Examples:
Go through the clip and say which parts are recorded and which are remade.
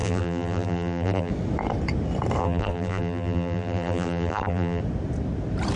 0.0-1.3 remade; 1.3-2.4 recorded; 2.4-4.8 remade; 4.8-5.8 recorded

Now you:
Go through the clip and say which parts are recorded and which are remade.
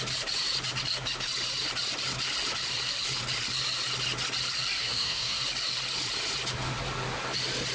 0.0-4.8 recorded; 4.8-5.4 remade; 5.4-7.7 recorded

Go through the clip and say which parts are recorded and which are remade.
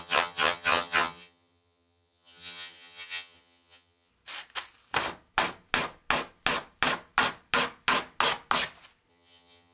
0.0-4.1 remade; 4.1-9.1 recorded; 9.1-9.7 remade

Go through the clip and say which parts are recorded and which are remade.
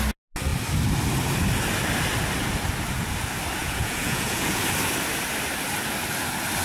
0.0-3.6 recorded; 3.6-4.6 remade; 4.6-6.6 recorded